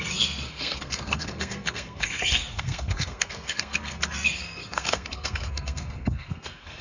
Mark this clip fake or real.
fake